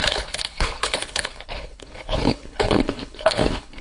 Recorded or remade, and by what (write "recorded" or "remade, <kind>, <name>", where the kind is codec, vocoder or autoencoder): remade, codec, HILCodec